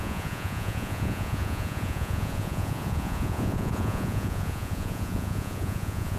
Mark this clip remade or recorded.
remade